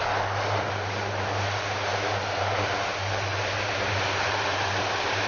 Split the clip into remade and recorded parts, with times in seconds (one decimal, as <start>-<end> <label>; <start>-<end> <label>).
0.0-5.3 recorded